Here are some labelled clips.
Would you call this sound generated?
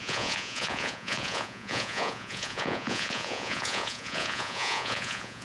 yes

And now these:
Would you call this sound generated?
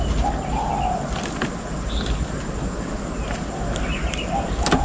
no